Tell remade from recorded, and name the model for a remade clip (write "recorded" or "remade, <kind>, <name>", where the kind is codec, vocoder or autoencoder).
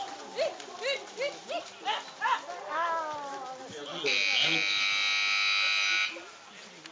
recorded